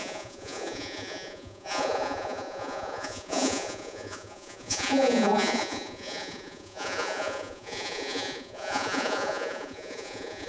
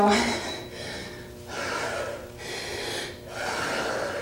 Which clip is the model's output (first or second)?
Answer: first